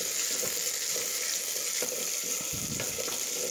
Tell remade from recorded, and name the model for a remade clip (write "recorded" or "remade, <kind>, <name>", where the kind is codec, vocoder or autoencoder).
recorded